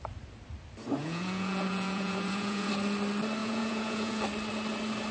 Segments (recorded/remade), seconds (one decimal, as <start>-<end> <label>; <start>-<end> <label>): 0.0-1.0 recorded; 1.0-2.7 remade; 2.7-3.4 recorded; 3.4-4.2 remade; 4.2-5.1 recorded